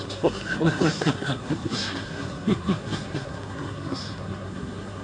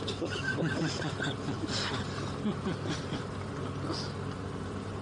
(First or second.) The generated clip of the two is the first